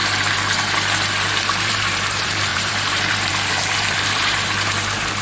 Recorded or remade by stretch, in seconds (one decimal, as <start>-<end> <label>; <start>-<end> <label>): 0.0-1.6 recorded; 1.6-5.2 remade